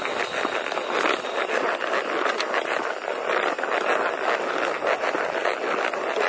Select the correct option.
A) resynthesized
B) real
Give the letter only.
B